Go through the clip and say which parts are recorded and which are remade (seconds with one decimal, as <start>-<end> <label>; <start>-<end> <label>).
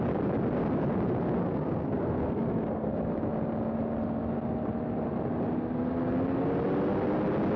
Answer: 0.0-1.4 recorded; 1.4-2.9 remade; 2.9-7.6 recorded